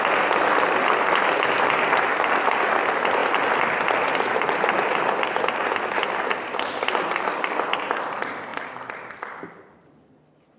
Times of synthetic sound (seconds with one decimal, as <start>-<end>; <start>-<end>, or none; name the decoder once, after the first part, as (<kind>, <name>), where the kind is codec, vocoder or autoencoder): 8.5-10.2 (vocoder, BigVGAN v2)